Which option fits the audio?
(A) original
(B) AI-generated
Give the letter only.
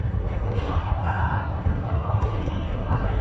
B